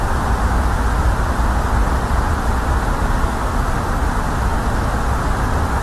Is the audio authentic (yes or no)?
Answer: yes